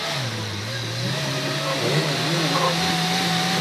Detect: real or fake real